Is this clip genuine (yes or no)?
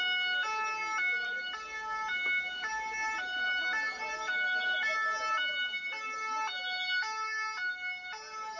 yes